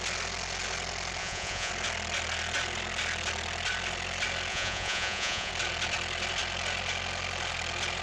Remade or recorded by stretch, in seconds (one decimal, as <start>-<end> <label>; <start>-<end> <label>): 0.0-1.2 recorded; 1.2-1.7 remade; 1.7-4.5 recorded; 4.5-5.5 remade; 5.5-8.0 recorded